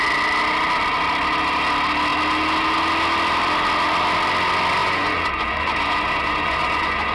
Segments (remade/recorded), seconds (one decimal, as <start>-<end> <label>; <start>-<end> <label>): 0.0-4.8 recorded; 4.8-7.1 remade